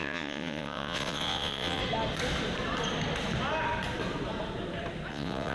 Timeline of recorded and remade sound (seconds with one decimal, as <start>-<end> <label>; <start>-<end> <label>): 0.0-1.8 remade; 1.8-5.1 recorded; 5.1-5.5 remade